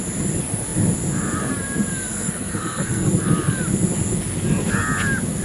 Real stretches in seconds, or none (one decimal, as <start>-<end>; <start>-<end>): 0.0-2.1; 3.1-5.4